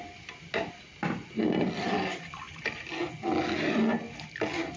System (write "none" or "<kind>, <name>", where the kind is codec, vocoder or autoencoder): none